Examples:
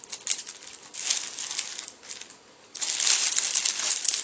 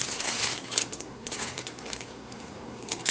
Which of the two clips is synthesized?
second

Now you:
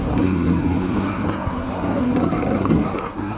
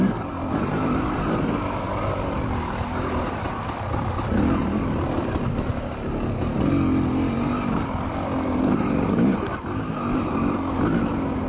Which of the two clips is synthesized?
first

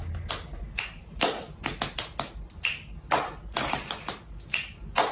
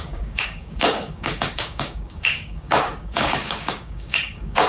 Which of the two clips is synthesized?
second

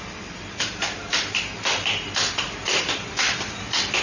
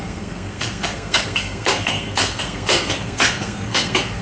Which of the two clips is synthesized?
second